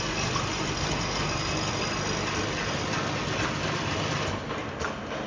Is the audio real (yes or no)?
yes